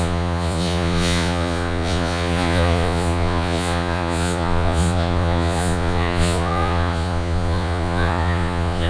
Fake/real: fake